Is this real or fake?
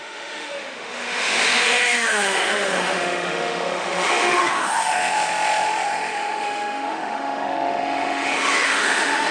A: fake